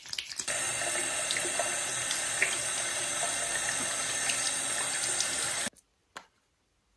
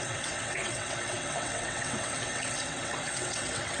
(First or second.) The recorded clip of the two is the first